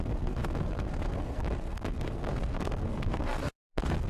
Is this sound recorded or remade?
remade